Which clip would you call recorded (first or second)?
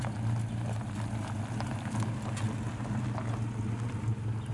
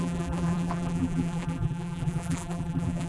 first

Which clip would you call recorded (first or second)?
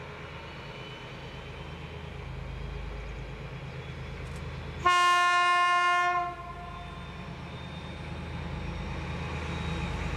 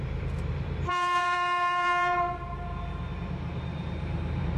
first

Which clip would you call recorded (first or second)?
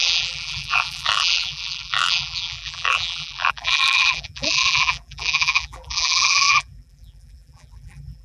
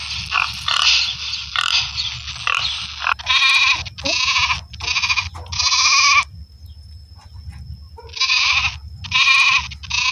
second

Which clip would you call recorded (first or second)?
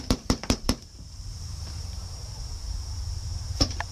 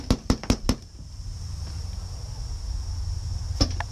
second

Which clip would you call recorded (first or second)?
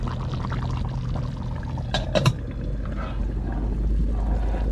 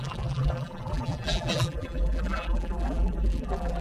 first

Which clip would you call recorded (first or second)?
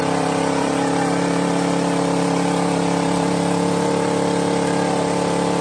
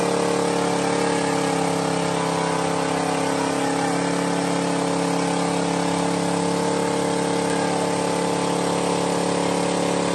second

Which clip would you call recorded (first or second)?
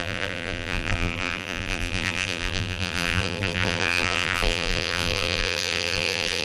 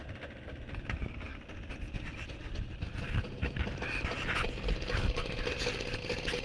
second